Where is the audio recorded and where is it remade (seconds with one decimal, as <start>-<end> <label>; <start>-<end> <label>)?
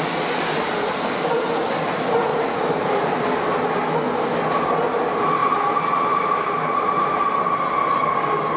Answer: 0.0-2.3 recorded; 2.3-3.5 remade; 3.5-5.4 recorded; 5.4-7.4 remade; 7.4-8.6 recorded